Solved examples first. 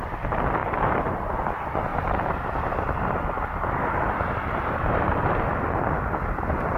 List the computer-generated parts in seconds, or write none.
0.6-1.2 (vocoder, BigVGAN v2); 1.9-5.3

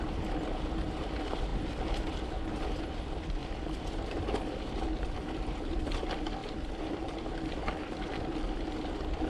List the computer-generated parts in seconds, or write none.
3.4-6.0 (vocoder, BigVGAN v2); 6.4-9.3

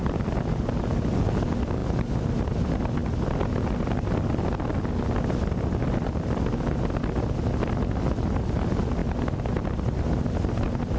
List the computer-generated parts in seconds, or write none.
none

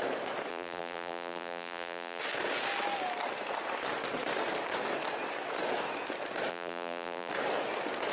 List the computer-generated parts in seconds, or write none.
0.5-2.2 (vocoder, BigVGAN v2); 6.5-7.3

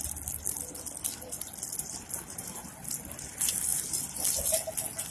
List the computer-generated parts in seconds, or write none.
none

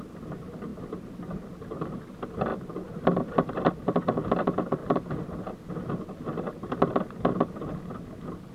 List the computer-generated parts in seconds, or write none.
4.8-5.7 (vocoder, BigVGAN v2)